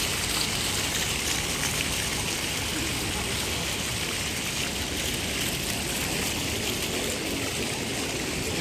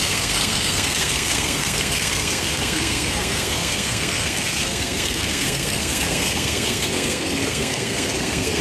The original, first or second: first